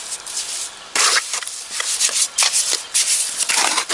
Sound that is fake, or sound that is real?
fake